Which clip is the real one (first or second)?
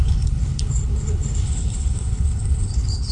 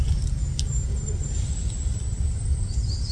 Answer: second